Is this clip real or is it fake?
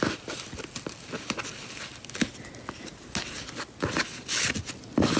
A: real